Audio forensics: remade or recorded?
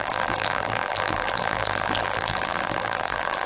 remade